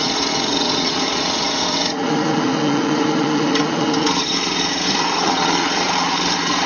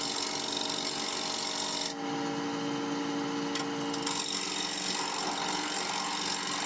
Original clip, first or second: second